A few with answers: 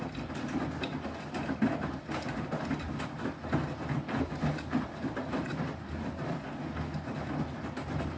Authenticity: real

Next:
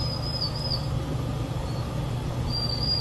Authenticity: real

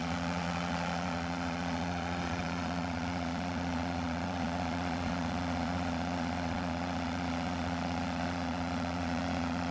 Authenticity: fake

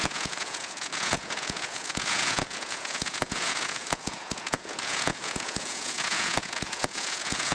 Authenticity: fake